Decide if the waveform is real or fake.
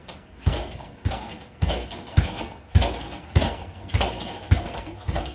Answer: fake